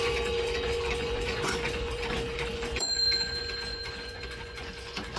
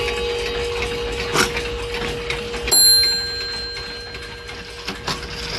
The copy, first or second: first